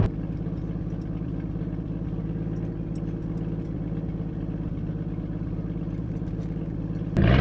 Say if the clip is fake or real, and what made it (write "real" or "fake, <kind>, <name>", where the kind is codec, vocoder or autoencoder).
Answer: real